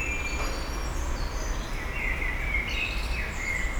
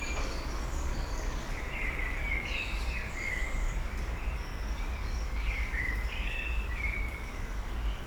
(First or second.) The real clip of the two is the first